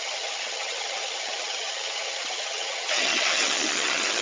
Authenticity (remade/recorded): remade